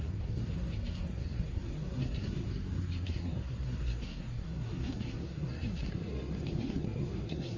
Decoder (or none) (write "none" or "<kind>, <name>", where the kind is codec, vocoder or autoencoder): codec, SNAC